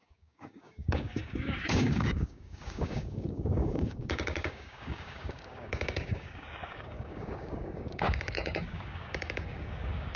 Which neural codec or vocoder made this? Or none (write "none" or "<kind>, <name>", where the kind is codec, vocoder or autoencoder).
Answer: codec, DAC